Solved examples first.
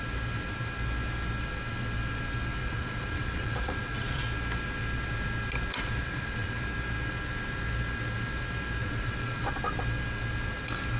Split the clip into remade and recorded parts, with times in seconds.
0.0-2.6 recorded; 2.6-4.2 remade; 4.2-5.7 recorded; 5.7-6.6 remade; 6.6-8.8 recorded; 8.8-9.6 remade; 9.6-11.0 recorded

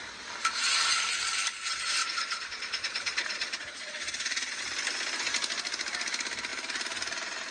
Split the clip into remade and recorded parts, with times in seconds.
0.0-2.0 recorded; 2.0-4.6 remade; 4.6-7.5 recorded

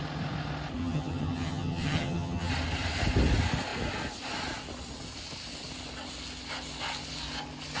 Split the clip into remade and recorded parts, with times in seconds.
0.0-0.8 recorded; 0.8-2.5 remade; 2.5-7.8 recorded

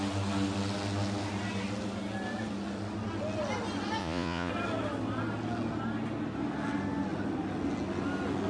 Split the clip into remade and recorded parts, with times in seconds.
0.0-4.0 recorded; 4.0-4.5 remade; 4.5-8.5 recorded